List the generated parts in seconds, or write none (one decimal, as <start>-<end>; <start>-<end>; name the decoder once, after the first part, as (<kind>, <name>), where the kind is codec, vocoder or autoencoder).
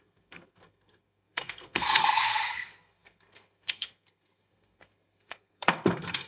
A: 0.0-6.3 (codec, SNAC)